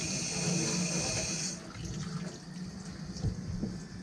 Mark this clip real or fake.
real